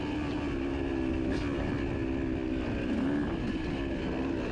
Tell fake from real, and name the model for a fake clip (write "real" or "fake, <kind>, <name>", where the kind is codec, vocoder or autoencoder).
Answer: real